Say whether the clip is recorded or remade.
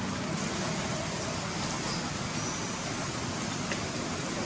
recorded